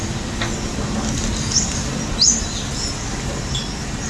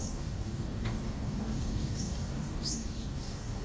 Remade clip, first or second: second